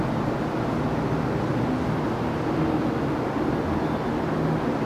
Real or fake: real